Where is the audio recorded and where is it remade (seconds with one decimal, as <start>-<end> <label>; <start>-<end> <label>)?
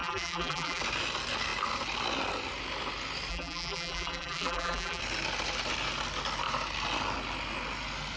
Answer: 0.0-0.8 remade; 0.8-3.3 recorded; 3.3-5.0 remade; 5.0-8.2 recorded